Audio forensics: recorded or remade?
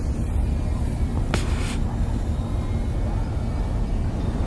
recorded